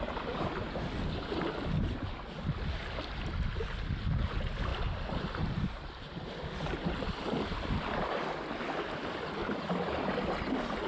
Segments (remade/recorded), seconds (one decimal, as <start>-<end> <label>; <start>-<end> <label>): 0.0-4.7 recorded; 4.7-6.3 remade; 6.3-10.9 recorded